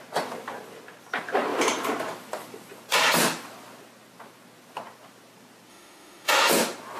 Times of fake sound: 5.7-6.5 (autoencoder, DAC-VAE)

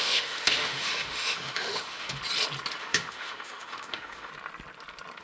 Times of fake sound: 0.0-2.2 (autoencoder, DAC-VAE); 2.8-4.3

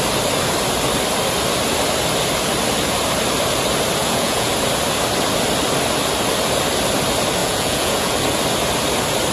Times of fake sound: 4.0-4.5 (vocoder, Vocos); 7.4-8.1